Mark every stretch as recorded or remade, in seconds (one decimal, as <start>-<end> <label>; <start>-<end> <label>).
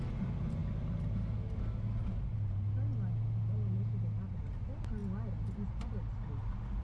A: 0.0-6.8 recorded